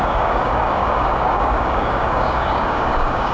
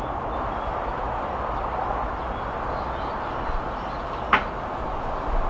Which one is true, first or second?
second